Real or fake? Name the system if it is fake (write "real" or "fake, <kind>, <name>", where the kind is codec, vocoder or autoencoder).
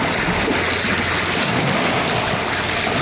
real